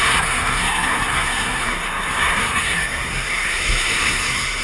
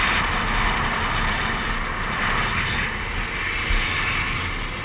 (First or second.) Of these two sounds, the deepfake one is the first